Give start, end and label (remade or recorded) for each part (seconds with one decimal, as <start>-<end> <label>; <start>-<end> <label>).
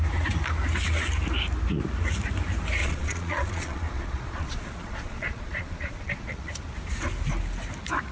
0.0-2.8 recorded; 2.8-6.5 remade; 6.5-8.1 recorded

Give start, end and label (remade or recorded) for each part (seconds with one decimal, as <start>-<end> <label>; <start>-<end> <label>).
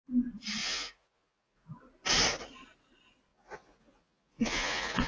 0.0-0.6 recorded; 0.6-1.8 remade; 1.8-3.3 recorded; 3.3-5.1 remade